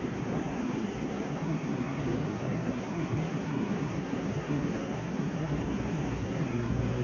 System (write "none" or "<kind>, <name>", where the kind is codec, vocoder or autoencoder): codec, SNAC